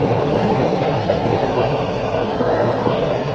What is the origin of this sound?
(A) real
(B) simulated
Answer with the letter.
B